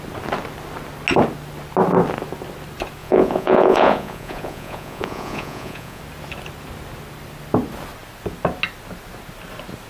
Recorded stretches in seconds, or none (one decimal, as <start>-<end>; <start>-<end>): 0.0-3.0; 6.0-9.9